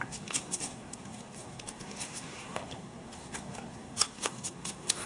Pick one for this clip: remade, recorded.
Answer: remade